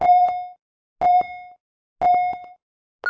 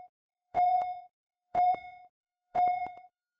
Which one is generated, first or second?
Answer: second